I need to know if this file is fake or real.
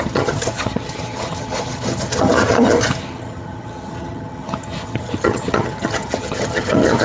fake